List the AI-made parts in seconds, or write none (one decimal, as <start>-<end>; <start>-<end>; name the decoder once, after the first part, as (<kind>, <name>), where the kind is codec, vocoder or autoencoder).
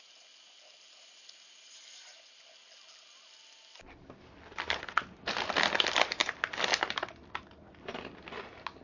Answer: none